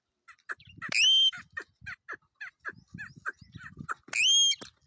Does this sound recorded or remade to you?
recorded